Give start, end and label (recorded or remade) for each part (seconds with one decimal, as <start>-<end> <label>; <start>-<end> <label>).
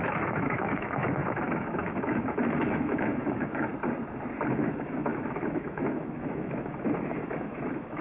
0.0-3.7 remade; 3.7-4.5 recorded; 4.5-8.0 remade